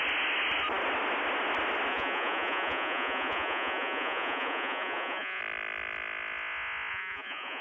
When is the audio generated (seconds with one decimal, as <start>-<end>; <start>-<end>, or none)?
1.9-5.4; 6.9-7.6